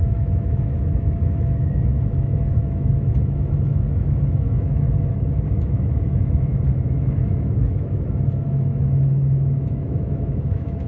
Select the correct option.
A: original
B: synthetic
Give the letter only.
B